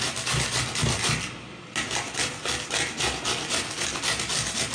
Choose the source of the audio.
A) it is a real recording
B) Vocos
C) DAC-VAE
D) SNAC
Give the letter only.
A